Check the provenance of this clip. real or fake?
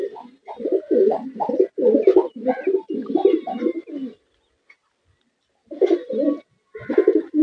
real